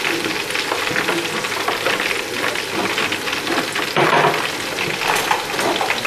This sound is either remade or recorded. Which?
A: recorded